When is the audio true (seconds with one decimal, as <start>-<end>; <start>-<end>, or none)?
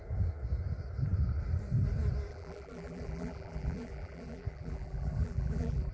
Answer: 0.0-2.3